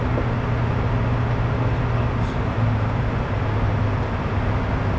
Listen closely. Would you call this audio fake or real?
real